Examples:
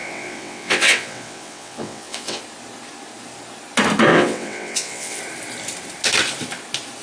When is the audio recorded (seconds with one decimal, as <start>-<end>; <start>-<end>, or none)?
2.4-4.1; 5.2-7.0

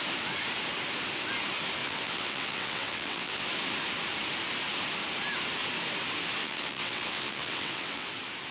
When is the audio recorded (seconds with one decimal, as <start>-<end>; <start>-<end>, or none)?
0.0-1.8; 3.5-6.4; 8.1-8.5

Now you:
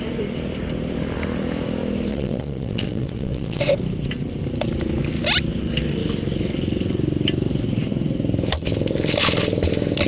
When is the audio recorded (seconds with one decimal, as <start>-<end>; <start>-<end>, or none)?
0.0-2.1; 3.6-10.1

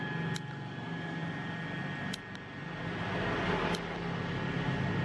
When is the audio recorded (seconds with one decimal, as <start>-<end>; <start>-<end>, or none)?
0.0-5.0